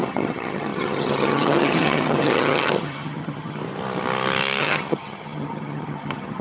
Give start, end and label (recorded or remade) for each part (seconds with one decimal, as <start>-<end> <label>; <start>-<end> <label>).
0.0-3.6 remade; 3.6-4.6 recorded; 4.6-6.4 remade